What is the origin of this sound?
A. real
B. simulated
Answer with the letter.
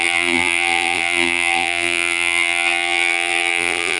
B